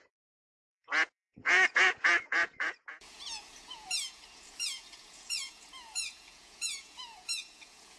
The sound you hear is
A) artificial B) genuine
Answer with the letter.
A